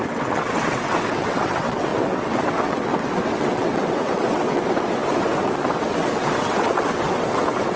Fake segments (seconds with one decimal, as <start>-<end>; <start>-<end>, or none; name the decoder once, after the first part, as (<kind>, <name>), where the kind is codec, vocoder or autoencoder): 0.0-7.8 (vocoder, WaveNeXt)